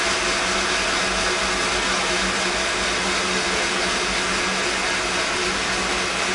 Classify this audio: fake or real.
real